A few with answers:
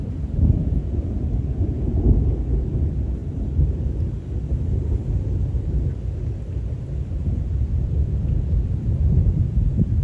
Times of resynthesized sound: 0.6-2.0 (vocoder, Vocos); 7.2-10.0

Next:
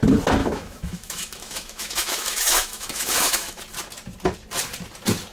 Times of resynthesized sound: 0.4-3.6 (autoencoder, DAC-VAE)

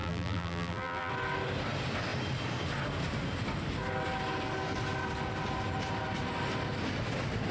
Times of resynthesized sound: 0.0-1.1 (vocoder, BigVGAN v2)

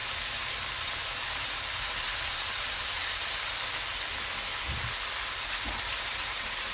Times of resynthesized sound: 0.0-3.0 (vocoder, BigVGAN v2); 5.4-6.7